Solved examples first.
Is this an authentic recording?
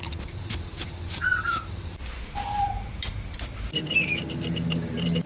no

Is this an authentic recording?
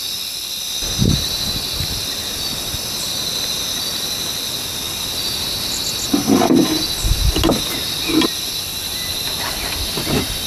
yes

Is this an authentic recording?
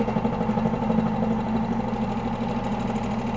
yes